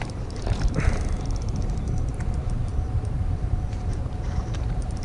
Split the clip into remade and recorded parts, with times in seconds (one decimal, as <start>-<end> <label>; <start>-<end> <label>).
0.0-5.0 remade